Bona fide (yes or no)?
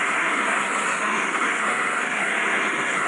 no